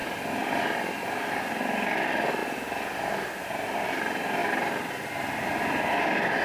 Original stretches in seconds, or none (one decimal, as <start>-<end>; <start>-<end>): 0.0-6.4